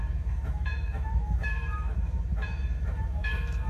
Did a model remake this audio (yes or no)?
yes